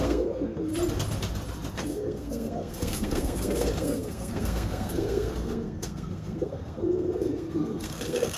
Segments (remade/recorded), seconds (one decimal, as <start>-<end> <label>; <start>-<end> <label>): 0.0-0.7 remade; 0.7-1.7 recorded; 1.7-8.4 remade

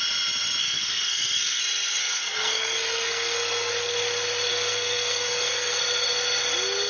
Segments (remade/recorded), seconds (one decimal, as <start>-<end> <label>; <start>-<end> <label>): 0.0-0.6 recorded; 0.6-1.6 remade; 1.6-2.0 recorded; 2.0-3.7 remade; 3.7-4.5 recorded; 4.5-5.8 remade; 5.8-6.9 recorded